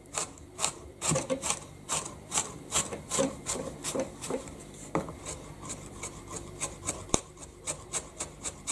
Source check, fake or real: fake